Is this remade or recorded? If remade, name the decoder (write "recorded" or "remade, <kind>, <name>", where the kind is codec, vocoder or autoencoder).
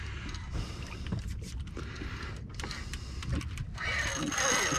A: recorded